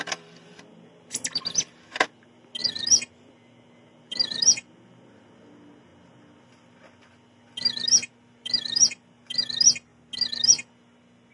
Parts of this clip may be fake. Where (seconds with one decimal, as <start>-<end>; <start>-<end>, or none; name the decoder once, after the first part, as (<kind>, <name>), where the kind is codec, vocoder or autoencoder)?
0.0-2.6 (vocoder, BigVGAN v2); 3.9-11.3